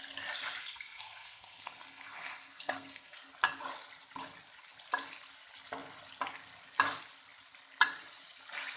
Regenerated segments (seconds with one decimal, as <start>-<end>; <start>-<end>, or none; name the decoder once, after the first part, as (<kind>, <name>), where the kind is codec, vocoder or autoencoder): 0.6-3.2 (codec, SNAC)